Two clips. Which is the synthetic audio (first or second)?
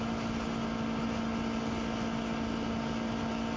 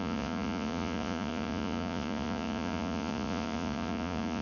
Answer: second